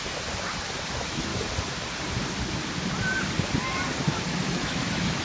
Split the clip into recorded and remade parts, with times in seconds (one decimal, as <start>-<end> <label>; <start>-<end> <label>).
0.0-0.9 recorded; 0.9-1.3 remade; 1.3-4.4 recorded; 4.4-5.2 remade